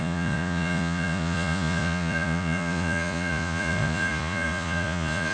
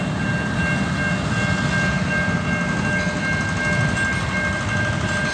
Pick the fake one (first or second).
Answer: first